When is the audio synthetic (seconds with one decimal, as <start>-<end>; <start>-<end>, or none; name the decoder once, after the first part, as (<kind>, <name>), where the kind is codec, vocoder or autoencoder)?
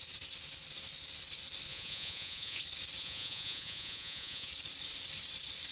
1.7-2.6 (vocoder, Vocos); 3.0-4.5